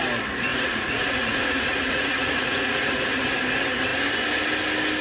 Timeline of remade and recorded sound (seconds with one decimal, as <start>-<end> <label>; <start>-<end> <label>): 0.0-0.5 recorded; 0.5-3.2 remade; 3.2-5.0 recorded